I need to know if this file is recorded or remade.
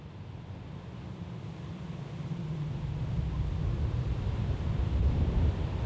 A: recorded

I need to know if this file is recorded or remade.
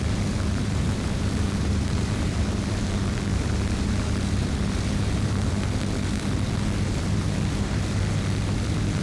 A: remade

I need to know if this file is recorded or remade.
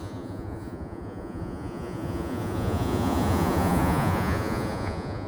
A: remade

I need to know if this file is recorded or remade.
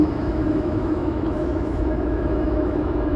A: remade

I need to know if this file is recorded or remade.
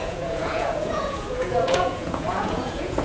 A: remade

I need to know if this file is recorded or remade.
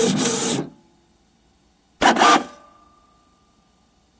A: recorded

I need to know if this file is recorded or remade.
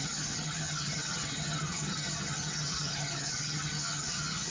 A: remade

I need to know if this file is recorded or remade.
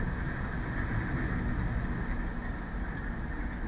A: recorded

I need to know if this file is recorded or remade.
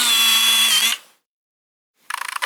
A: remade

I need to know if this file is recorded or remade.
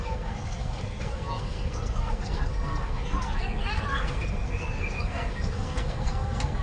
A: remade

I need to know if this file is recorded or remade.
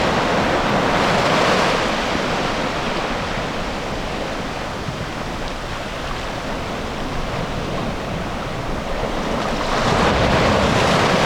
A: recorded